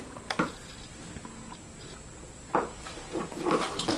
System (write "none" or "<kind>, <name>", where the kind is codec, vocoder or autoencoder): none